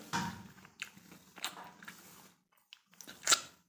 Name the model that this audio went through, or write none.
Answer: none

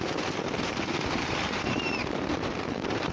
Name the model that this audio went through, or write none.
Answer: vocoder, BigVGAN v2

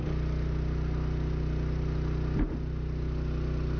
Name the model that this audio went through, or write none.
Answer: none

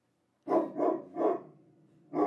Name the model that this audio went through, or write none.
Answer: none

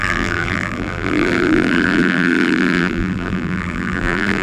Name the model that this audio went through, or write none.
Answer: vocoder, BigVGAN v2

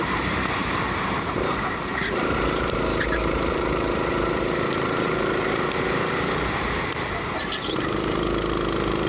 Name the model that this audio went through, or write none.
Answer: vocoder, BigVGAN v2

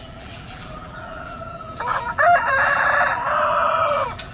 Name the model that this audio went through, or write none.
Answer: vocoder, BigVGAN v2